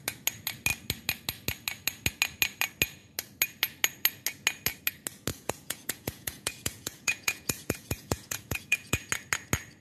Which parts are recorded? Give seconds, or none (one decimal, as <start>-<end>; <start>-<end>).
0.0-5.3; 9.1-9.8